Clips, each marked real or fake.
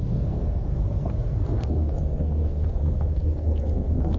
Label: fake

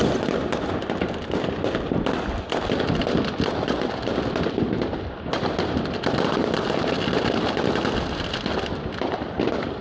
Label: real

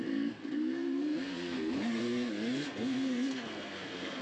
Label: fake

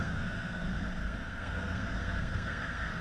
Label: fake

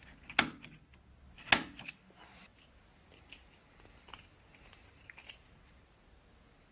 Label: real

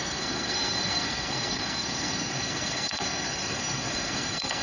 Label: fake